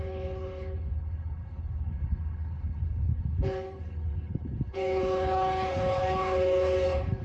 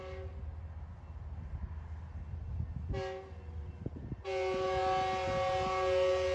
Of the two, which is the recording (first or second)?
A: second